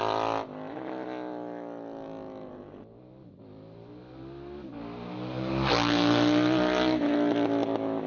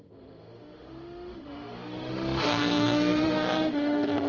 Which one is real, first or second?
first